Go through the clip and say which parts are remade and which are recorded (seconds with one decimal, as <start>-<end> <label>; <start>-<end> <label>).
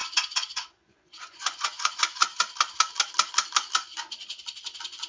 0.0-2.4 remade; 2.4-3.9 recorded; 3.9-4.4 remade; 4.4-5.1 recorded